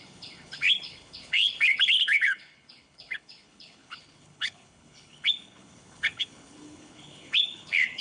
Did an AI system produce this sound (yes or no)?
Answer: yes